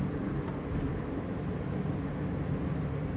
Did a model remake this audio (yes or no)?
no